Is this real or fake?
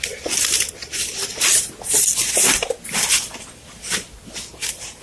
real